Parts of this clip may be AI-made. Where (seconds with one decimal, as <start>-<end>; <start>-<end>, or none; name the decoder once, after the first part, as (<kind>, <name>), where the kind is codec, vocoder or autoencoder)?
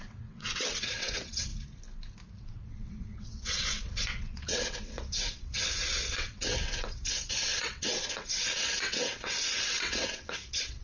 0.0-1.5 (vocoder, WaveNeXt); 2.4-10.8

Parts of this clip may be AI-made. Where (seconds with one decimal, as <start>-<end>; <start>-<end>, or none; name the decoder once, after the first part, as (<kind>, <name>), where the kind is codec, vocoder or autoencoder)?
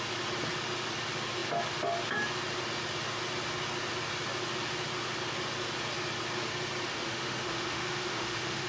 6.9-8.7 (autoencoder, DAC-VAE)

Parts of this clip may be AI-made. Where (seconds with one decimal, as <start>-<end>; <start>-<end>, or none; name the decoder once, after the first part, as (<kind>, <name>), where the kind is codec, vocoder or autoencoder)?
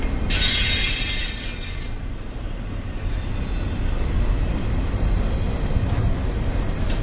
none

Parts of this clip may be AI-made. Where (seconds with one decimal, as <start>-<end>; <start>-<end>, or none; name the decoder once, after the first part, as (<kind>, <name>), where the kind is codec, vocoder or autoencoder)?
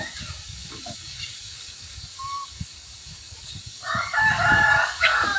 0.0-5.4 (codec, DAC)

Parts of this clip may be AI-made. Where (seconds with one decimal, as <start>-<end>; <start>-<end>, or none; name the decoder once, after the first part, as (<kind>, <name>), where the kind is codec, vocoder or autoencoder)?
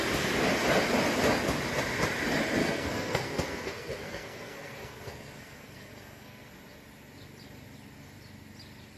2.6-6.5 (codec, SNAC)